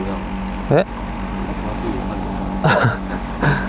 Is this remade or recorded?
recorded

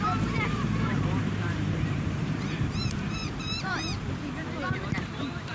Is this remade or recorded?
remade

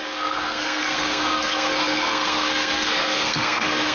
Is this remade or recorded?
remade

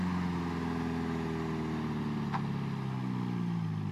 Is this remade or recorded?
recorded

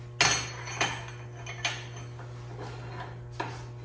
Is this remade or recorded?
recorded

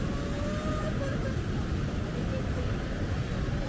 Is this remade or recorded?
recorded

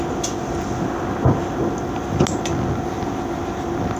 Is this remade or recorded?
recorded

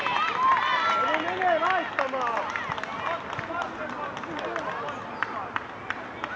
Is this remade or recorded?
recorded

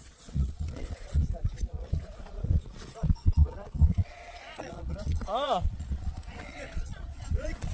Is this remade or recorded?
remade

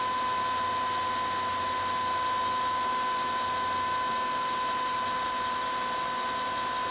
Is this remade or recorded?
recorded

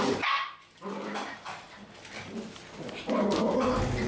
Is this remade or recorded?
recorded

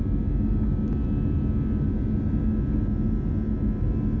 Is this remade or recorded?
recorded